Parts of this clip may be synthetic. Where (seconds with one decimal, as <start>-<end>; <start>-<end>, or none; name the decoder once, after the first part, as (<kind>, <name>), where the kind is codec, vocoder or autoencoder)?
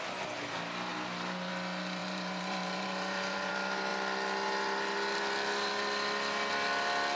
2.0-3.5 (vocoder, BigVGAN v2)